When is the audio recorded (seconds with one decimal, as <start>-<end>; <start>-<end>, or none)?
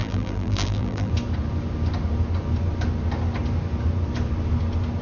1.1-5.0